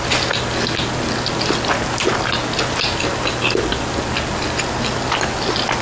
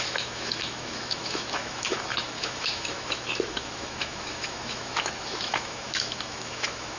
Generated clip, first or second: second